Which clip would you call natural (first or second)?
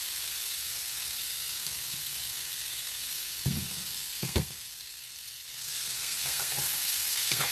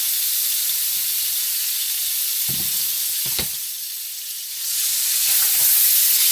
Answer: second